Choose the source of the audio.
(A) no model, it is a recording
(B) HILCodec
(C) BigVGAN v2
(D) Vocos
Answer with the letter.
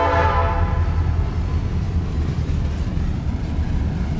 A